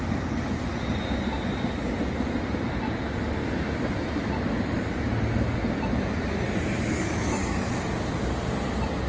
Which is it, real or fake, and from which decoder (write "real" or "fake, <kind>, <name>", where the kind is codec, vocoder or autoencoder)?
real